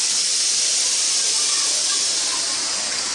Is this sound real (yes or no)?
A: yes